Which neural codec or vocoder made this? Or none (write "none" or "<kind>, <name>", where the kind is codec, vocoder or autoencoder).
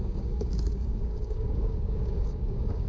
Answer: codec, DAC